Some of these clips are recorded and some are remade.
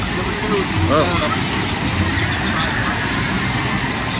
recorded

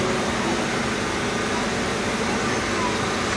recorded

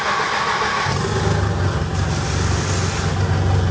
recorded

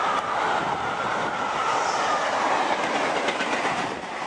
recorded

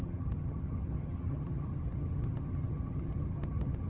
remade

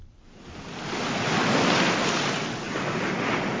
recorded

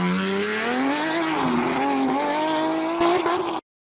recorded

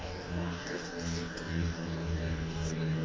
remade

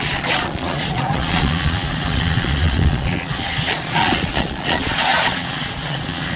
remade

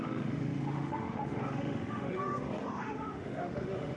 remade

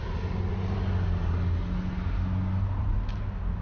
recorded